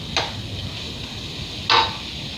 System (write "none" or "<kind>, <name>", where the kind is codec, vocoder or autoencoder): none